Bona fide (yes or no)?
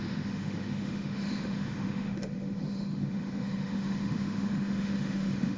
no